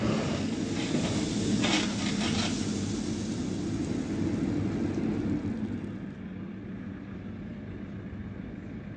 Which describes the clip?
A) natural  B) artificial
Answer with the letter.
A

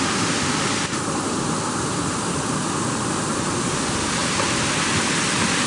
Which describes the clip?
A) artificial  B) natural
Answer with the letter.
B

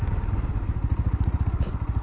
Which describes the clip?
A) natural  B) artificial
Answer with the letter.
A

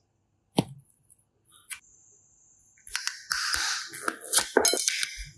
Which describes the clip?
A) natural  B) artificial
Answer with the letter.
A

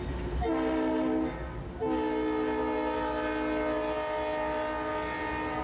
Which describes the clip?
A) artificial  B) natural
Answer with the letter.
B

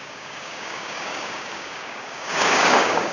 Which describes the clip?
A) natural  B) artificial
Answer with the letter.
B